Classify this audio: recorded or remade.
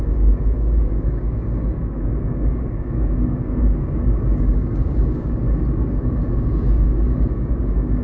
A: remade